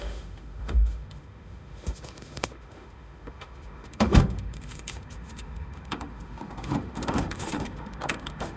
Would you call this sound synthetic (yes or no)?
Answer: yes